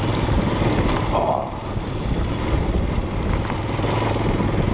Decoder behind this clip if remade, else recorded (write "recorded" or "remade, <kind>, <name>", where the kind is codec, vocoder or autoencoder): recorded